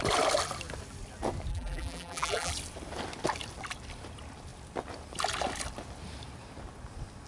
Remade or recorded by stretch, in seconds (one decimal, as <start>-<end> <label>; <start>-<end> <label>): 0.0-1.5 recorded; 1.5-2.5 remade; 2.5-7.3 recorded